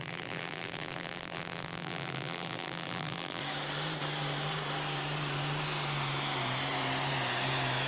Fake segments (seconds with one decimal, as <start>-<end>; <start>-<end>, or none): 0.0-3.4